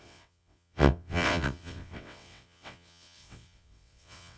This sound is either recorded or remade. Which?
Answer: remade